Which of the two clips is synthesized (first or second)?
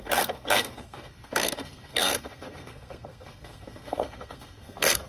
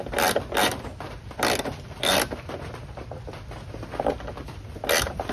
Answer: first